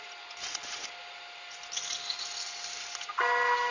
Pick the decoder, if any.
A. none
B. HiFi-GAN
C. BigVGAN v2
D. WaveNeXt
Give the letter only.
A